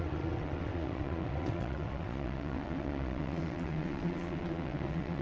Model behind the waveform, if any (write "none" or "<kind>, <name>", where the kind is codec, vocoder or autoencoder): vocoder, WaveNeXt